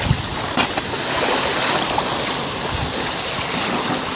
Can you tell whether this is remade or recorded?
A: recorded